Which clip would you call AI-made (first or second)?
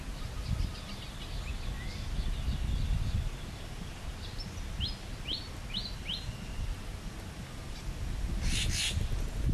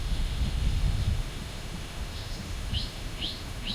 second